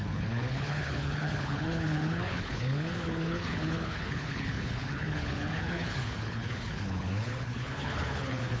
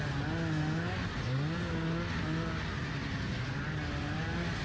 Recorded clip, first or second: second